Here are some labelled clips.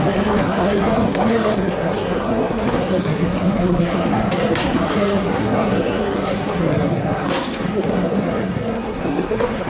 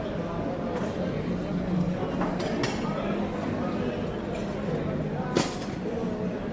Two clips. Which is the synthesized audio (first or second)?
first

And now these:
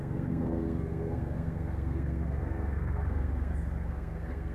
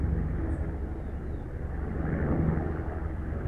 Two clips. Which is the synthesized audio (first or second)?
first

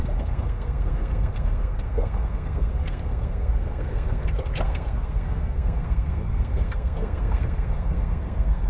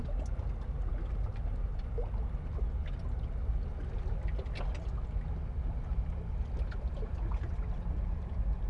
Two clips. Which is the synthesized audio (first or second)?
first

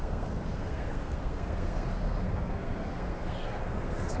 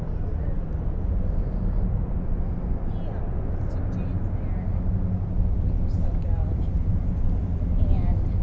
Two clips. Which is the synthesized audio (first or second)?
first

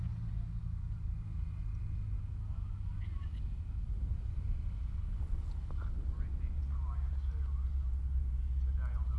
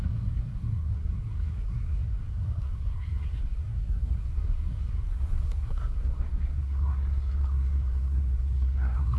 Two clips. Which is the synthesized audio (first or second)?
second